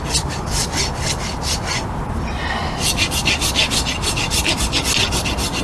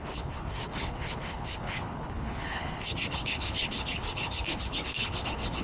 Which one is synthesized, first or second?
second